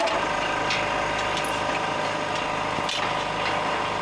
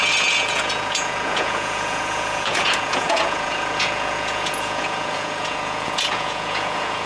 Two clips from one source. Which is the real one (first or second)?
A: first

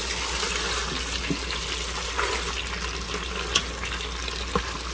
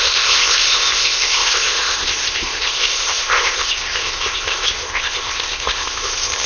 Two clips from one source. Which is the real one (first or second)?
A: first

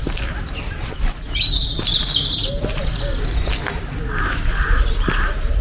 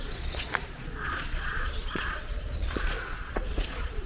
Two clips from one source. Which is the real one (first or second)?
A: first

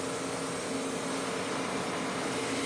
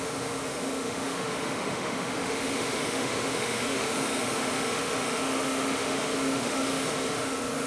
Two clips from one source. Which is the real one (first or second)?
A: first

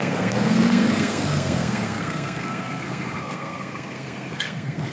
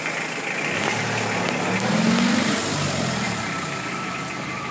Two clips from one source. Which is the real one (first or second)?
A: second